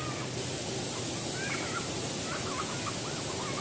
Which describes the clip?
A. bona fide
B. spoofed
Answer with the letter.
A